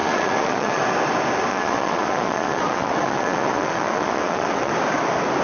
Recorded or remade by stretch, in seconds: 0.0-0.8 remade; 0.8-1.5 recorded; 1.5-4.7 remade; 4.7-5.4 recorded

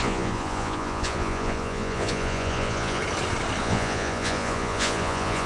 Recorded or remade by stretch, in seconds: 0.0-3.0 remade; 3.0-3.6 recorded; 3.6-5.5 remade

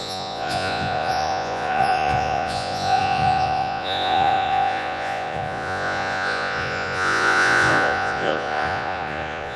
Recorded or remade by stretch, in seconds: 0.0-9.6 remade

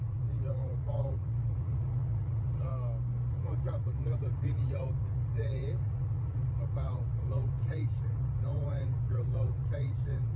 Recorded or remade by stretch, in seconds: 0.0-2.7 remade; 2.7-3.3 recorded; 3.3-10.4 remade

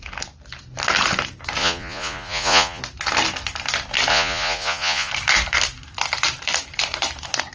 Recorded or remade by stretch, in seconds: 0.0-1.6 recorded; 1.6-2.8 remade; 2.8-4.1 recorded; 4.1-5.1 remade; 5.1-7.5 recorded

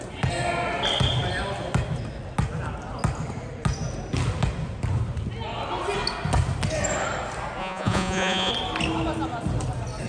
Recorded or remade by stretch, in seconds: 0.0-7.6 recorded; 7.6-8.5 remade; 8.5-10.1 recorded